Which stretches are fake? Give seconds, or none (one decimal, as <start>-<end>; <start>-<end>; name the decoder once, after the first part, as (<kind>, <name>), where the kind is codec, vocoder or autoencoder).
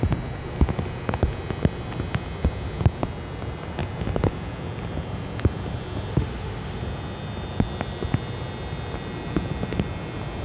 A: 6.1-6.8 (autoencoder, DAC-VAE)